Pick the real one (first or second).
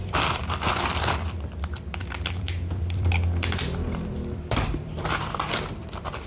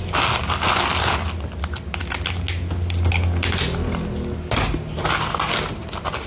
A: second